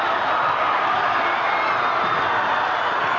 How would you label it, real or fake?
real